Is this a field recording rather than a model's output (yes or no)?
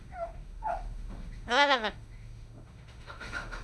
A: no